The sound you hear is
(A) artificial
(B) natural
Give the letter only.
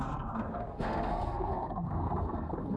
A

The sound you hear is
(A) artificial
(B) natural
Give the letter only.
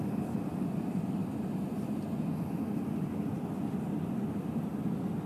B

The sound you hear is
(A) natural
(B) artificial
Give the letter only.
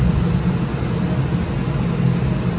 A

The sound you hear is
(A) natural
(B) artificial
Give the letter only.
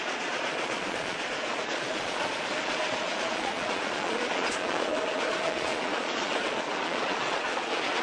B